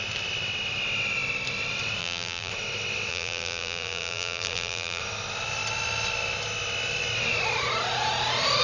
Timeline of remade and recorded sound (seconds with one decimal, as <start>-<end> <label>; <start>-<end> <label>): 0.0-2.0 recorded; 2.0-2.5 remade; 2.5-3.1 recorded; 3.1-5.0 remade; 5.0-8.6 recorded

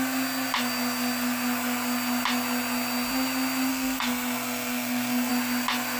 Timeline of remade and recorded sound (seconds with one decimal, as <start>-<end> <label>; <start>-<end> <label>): 0.0-3.7 recorded; 3.7-5.3 remade; 5.3-6.0 recorded

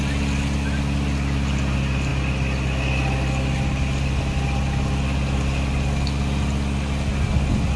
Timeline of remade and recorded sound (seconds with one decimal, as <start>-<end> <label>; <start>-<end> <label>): 0.0-7.8 recorded

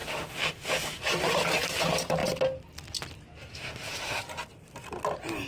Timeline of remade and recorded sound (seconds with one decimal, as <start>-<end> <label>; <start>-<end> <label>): 0.0-1.0 remade; 1.0-3.5 recorded; 3.5-4.2 remade; 4.2-5.5 recorded

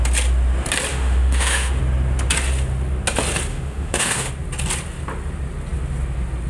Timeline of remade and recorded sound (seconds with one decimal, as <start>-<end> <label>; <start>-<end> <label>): 0.0-0.9 recorded; 0.9-1.8 remade; 1.8-3.5 recorded; 3.5-4.3 remade; 4.3-6.5 recorded

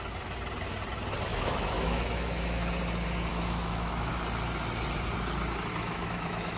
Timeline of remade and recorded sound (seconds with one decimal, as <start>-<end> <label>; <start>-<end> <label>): 0.0-1.3 recorded; 1.3-2.7 remade; 2.7-3.3 recorded; 3.3-4.1 remade; 4.1-5.7 recorded; 5.7-6.6 remade

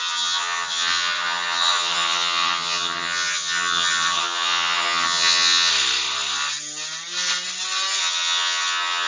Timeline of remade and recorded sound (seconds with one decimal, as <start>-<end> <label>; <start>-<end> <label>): 0.0-5.7 remade; 5.7-8.0 recorded; 8.0-9.1 remade

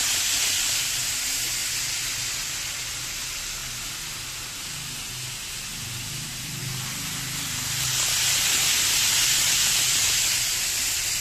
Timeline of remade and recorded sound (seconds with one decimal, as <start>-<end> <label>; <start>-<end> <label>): 0.0-11.2 recorded